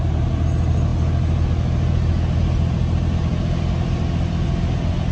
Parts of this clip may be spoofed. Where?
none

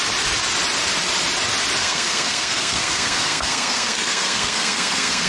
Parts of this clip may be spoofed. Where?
1.8-5.3 (codec, SNAC)